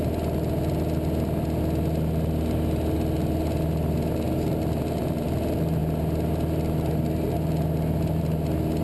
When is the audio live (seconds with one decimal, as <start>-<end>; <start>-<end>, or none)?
0.0-8.8